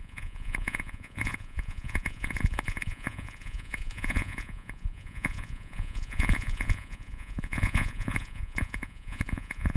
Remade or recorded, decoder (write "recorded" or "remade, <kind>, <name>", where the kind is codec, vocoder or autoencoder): remade, vocoder, Vocos